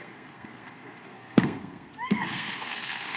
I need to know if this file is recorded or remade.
remade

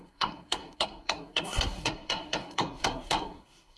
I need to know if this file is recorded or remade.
remade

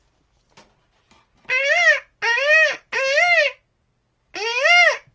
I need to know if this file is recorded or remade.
recorded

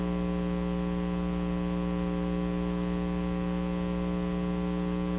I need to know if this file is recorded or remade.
recorded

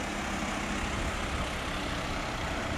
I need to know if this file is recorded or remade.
recorded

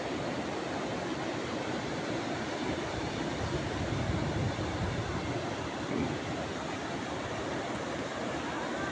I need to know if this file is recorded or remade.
recorded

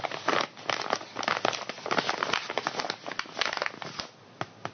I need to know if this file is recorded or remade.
recorded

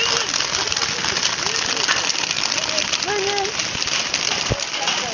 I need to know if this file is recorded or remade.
recorded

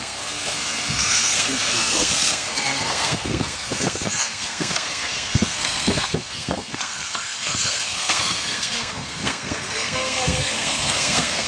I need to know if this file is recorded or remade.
remade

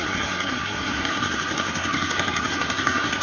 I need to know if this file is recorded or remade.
remade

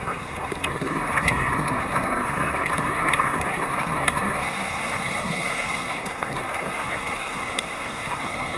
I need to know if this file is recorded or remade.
remade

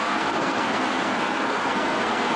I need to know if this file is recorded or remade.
remade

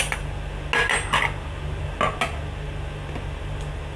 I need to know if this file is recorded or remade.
recorded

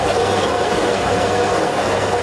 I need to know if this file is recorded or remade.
remade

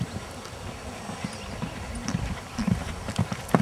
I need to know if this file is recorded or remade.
recorded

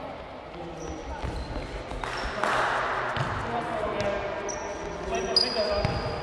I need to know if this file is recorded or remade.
recorded